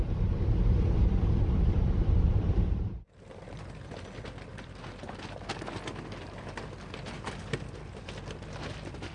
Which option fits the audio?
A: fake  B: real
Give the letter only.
B